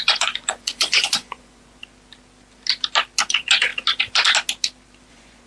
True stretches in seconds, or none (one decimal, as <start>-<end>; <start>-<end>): 1.8-3.3; 3.7-5.1